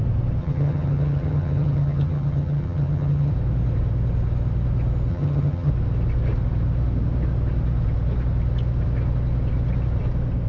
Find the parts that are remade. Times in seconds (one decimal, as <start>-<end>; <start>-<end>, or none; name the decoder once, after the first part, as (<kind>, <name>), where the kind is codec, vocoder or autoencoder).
0.4-3.3 (vocoder, HiFi-GAN); 5.1-5.7

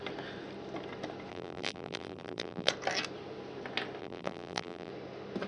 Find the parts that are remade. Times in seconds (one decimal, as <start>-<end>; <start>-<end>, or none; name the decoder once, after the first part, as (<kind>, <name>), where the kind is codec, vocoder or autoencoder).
1.3-2.7 (vocoder, BigVGAN v2); 4.0-4.9

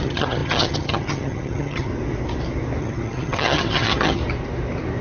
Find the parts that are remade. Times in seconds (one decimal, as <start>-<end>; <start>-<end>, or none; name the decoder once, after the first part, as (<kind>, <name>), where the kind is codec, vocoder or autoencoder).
0.0-1.9 (vocoder, HiFi-GAN); 2.8-4.2